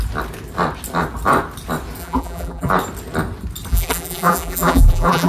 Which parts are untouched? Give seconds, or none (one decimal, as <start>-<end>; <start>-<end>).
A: 0.0-2.0; 2.7-3.7